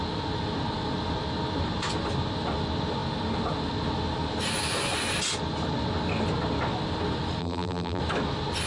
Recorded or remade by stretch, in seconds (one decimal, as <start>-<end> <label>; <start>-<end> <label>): 0.0-7.4 recorded; 7.4-8.0 remade; 8.0-8.7 recorded